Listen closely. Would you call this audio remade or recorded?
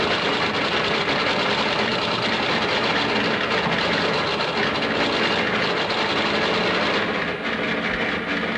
recorded